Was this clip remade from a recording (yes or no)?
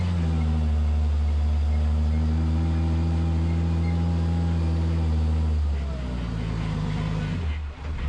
no